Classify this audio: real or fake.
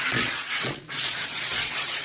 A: fake